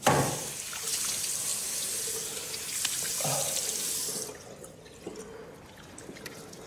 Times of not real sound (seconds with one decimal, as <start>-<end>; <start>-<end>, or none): none